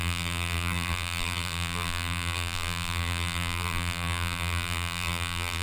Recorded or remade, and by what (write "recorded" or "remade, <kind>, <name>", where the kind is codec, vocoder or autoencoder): remade, vocoder, BigVGAN v2